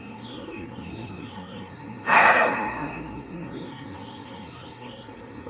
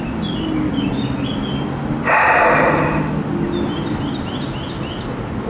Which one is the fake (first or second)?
first